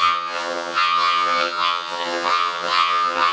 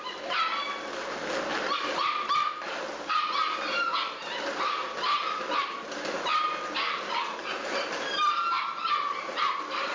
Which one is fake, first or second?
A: first